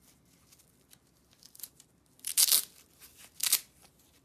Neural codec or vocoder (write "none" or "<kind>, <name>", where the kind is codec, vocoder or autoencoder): none